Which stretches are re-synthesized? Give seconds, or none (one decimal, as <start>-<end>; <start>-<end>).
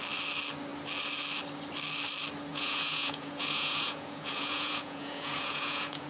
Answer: 2.5-6.1